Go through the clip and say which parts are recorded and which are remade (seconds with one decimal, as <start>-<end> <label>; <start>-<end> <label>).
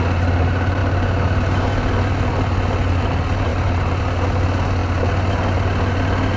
0.0-6.4 recorded